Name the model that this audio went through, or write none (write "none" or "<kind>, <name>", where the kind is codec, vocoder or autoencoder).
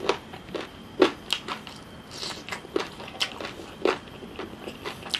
none